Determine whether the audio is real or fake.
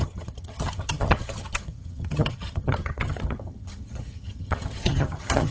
fake